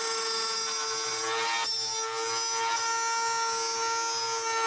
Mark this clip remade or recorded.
recorded